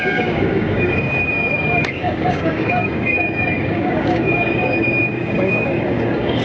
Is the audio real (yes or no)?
no